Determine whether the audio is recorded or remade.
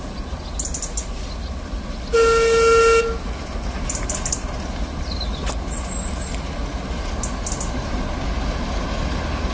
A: recorded